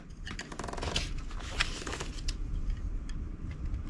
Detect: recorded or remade recorded